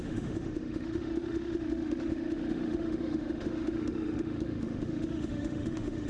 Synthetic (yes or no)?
yes